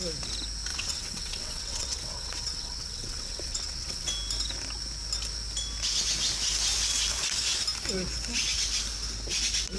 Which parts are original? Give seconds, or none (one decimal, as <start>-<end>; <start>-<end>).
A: 0.0-0.7; 4.1-9.8